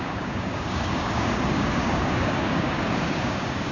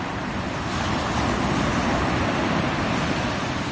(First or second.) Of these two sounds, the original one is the second